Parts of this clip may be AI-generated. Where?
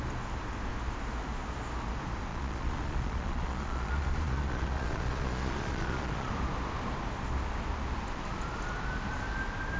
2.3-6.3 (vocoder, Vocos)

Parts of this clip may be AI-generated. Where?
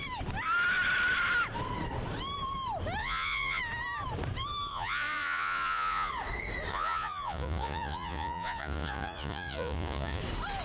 3.0-3.6 (vocoder, Vocos); 4.7-6.1; 6.7-10.2